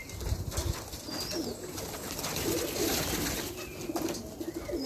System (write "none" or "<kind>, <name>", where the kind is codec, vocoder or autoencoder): none